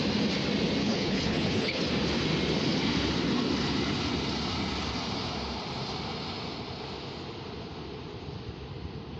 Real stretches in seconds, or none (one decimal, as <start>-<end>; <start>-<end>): 0.0-0.8; 1.8-9.2